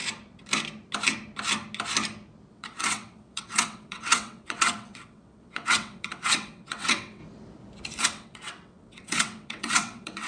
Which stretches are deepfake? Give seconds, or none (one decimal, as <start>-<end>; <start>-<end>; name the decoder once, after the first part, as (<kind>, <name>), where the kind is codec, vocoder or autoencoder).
2.5-7.2 (vocoder, WaveNeXt); 8.0-10.3